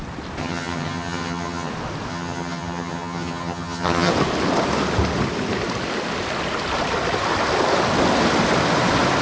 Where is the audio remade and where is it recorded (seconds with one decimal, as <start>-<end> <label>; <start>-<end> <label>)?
0.0-0.4 recorded; 0.4-1.7 remade; 1.7-2.1 recorded; 2.1-4.1 remade; 4.1-9.2 recorded